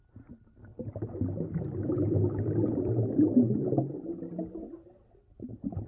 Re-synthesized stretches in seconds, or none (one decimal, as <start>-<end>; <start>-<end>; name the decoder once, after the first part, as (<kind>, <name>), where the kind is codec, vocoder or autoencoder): none